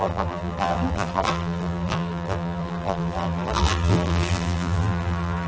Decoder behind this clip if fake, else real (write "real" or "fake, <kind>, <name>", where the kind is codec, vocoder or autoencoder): fake, vocoder, BigVGAN v2